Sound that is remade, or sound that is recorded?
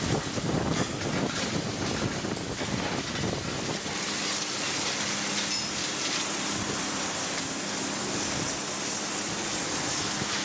recorded